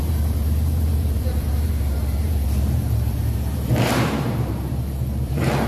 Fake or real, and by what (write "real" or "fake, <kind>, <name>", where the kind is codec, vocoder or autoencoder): fake, vocoder, BigVGAN v2